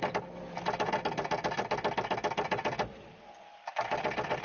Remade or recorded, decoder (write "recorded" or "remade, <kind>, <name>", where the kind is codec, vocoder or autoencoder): recorded